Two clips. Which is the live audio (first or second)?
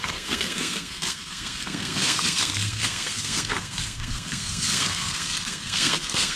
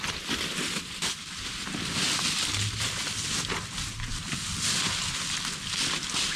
second